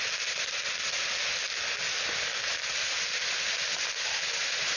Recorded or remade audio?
recorded